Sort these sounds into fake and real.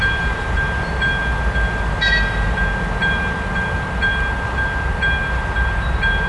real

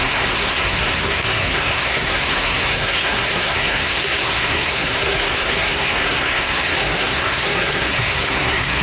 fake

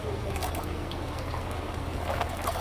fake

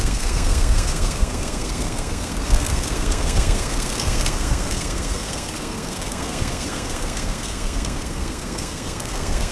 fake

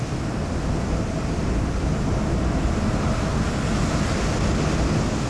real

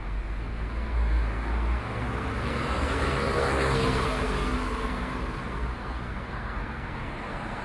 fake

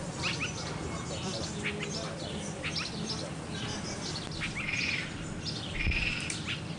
real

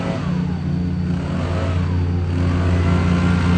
real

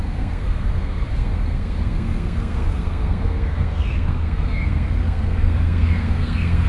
fake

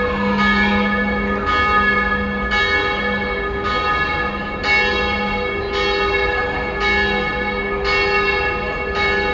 real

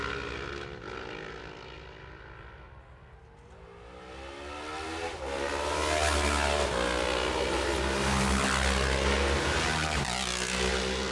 real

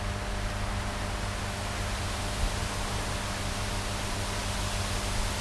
real